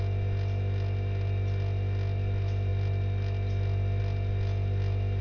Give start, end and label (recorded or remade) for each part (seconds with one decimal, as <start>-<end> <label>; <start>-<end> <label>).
0.0-5.2 recorded